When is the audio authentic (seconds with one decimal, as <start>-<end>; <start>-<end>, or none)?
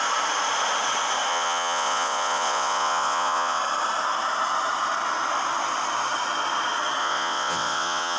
0.0-1.3; 3.6-7.0